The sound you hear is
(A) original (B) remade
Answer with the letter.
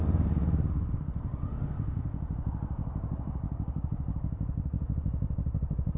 B